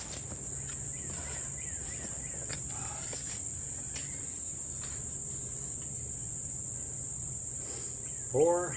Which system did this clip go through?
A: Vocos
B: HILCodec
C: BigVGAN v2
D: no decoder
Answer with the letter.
D